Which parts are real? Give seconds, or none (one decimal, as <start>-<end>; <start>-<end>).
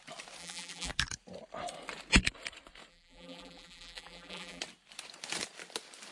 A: 0.0-0.4; 0.9-2.9; 4.6-6.1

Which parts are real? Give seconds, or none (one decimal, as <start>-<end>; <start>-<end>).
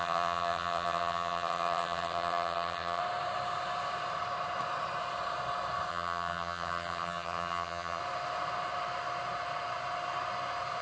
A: 3.0-5.9; 8.0-10.8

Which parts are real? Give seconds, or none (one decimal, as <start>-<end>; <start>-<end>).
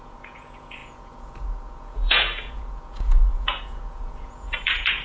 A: none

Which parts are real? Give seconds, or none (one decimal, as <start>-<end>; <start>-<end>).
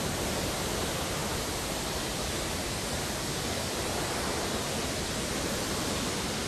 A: 0.0-6.5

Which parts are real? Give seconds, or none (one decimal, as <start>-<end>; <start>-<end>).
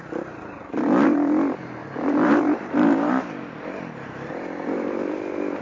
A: 0.0-1.8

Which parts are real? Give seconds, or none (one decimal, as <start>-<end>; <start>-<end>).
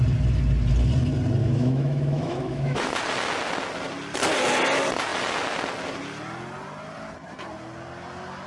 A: 0.0-1.4; 2.9-8.5